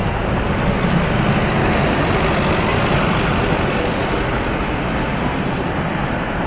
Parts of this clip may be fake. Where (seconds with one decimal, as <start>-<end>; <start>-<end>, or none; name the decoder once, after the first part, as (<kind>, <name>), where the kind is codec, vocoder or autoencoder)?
2.7-3.7 (vocoder, BigVGAN v2)